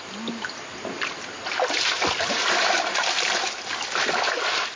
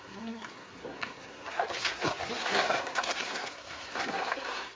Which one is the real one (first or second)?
first